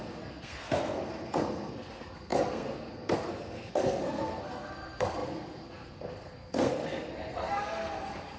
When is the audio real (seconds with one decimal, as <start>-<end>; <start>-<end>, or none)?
none